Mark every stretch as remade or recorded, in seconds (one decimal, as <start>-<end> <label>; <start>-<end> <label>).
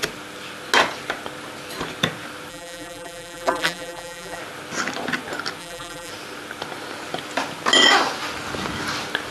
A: 0.0-2.5 recorded; 2.5-4.4 remade; 4.4-5.6 recorded; 5.6-6.1 remade; 6.1-9.3 recorded